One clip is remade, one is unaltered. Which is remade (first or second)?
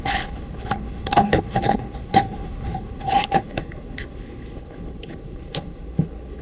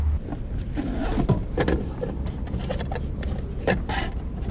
first